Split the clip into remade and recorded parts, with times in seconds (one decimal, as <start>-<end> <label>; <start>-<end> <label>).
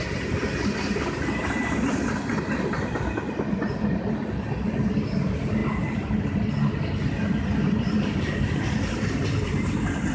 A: 0.0-10.1 recorded